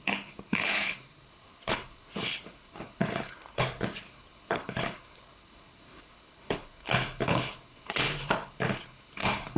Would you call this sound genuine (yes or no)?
no